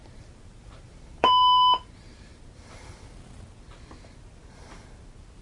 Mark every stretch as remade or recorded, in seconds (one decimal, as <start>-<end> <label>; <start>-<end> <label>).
0.0-2.5 remade; 2.5-5.4 recorded